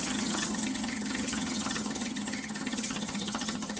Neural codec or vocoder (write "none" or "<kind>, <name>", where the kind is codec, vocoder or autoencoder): vocoder, HiFi-GAN